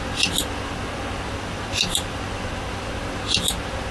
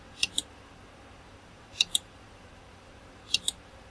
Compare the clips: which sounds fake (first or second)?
second